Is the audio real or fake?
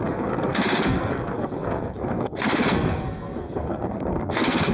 fake